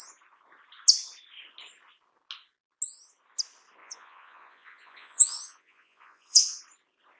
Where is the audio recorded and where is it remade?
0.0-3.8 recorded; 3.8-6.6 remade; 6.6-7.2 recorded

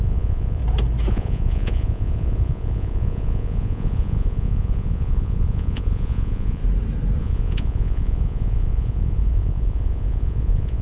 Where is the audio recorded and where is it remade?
0.0-0.6 remade; 0.6-1.1 recorded; 1.1-6.6 remade; 6.6-7.2 recorded; 7.2-10.8 remade

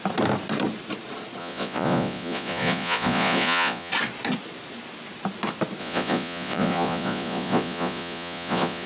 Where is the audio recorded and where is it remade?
0.0-1.4 recorded; 1.4-3.9 remade; 3.9-5.8 recorded; 5.8-8.9 remade